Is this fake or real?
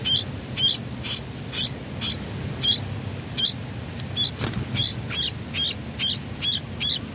real